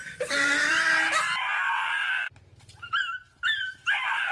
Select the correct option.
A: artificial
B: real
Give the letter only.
A